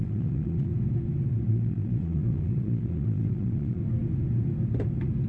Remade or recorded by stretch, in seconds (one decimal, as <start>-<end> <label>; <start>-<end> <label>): 0.0-0.7 remade; 0.7-1.5 recorded; 1.5-3.8 remade; 3.8-5.3 recorded